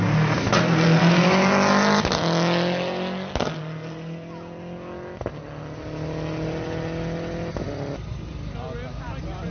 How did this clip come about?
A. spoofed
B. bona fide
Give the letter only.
B